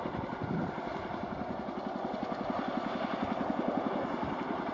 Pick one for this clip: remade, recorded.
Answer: recorded